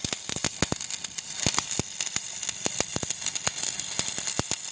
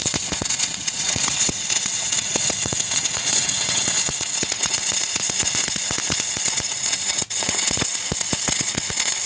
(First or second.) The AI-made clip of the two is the second